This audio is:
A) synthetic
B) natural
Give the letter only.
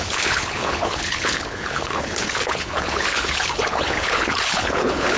A